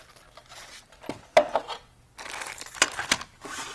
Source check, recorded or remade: recorded